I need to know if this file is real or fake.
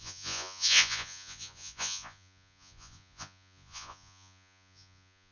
fake